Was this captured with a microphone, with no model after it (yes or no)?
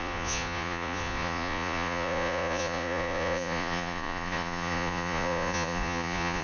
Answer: no